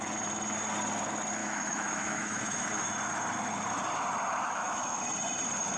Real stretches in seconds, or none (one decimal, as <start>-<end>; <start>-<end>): 0.0-1.4; 2.9-4.4; 5.0-5.8